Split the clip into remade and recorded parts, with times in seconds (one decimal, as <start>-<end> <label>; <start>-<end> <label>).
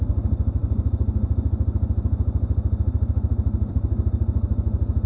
0.0-5.1 recorded